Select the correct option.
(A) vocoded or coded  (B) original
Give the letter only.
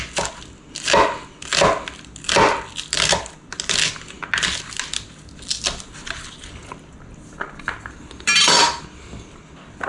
B